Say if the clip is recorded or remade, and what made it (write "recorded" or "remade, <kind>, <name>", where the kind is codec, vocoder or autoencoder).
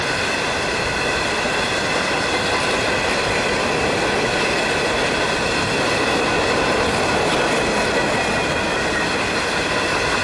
recorded